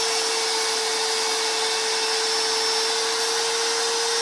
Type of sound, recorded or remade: recorded